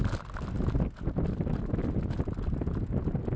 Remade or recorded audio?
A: recorded